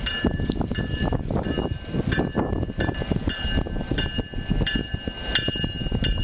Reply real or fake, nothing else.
real